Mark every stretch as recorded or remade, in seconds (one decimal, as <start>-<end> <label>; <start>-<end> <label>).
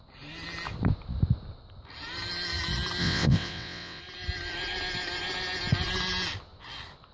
0.0-3.0 recorded; 3.0-4.0 remade; 4.0-7.1 recorded